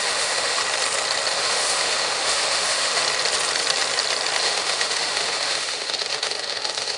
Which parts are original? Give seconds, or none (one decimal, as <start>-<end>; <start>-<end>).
0.6-1.3; 3.0-4.4